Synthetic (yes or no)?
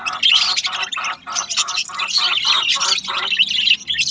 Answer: no